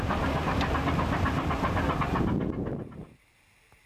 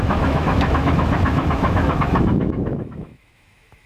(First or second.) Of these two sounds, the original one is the first